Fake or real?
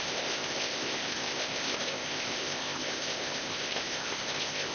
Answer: fake